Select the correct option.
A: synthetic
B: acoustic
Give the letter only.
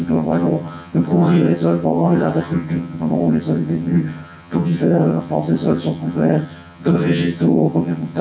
A